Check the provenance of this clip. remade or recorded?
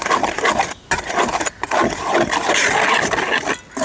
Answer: recorded